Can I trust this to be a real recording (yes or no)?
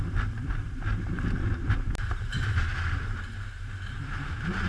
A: yes